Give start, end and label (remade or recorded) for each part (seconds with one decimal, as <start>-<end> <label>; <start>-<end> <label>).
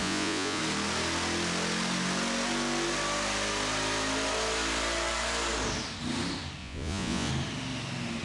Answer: 0.0-0.6 remade; 0.6-6.6 recorded; 6.6-7.3 remade; 7.3-8.2 recorded